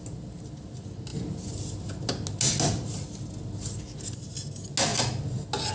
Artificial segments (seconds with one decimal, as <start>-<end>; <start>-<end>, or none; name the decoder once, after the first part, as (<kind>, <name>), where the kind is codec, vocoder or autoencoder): none